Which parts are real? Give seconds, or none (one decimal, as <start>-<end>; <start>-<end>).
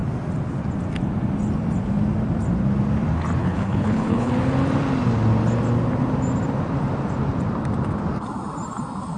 0.0-3.4; 4.3-9.2